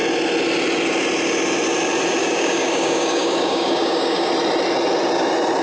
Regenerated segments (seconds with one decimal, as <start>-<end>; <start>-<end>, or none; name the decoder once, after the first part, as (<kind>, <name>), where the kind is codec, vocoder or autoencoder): 2.2-4.3 (codec, DAC)